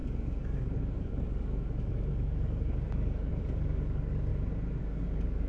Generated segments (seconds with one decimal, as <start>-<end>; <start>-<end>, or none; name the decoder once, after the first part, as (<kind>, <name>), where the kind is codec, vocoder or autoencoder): 0.0-4.3 (codec, DAC); 4.8-5.5